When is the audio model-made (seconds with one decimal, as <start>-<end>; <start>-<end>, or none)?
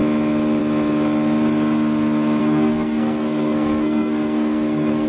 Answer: 2.4-5.1